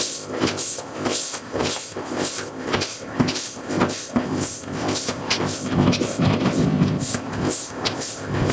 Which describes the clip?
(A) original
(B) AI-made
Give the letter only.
B